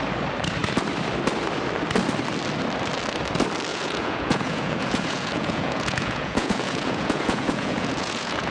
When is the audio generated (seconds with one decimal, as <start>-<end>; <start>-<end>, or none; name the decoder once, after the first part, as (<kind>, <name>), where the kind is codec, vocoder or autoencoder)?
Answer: 3.7-8.5 (vocoder, Vocos)